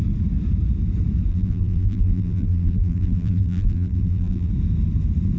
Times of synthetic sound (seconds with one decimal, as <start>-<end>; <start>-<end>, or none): 1.3-4.5